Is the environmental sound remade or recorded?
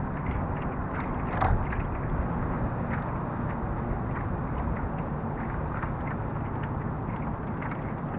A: recorded